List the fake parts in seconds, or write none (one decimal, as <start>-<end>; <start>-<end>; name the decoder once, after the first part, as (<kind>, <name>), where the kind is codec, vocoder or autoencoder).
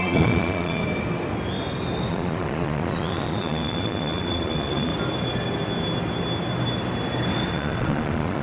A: 0.0-0.8 (vocoder, Vocos); 2.1-4.9; 7.5-8.4